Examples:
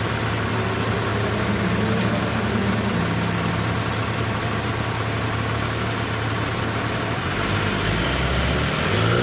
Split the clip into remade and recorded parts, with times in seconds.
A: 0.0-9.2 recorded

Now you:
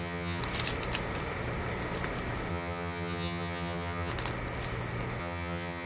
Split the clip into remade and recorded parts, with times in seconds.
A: 0.0-0.4 remade; 0.4-2.5 recorded; 2.5-4.1 remade; 4.1-5.2 recorded; 5.2-5.9 remade

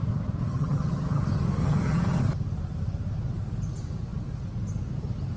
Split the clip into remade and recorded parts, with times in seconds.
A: 0.0-0.5 recorded; 0.5-1.2 remade; 1.2-1.6 recorded; 1.6-2.2 remade; 2.2-5.4 recorded

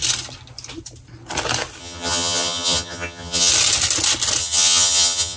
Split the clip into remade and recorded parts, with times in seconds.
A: 0.0-1.8 recorded; 1.8-3.5 remade; 3.5-4.4 recorded; 4.4-5.4 remade

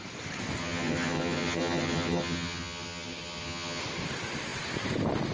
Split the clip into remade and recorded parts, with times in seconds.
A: 0.0-0.6 recorded; 0.6-3.8 remade; 3.8-5.3 recorded